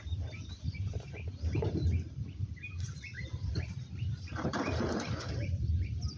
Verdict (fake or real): fake